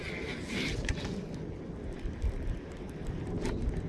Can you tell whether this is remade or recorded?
recorded